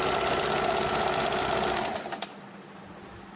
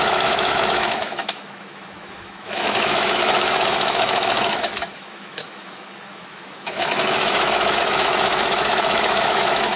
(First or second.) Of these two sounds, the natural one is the first